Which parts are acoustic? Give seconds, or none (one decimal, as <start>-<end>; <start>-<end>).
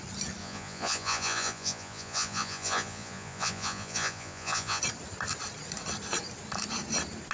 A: 0.0-0.4; 4.8-7.3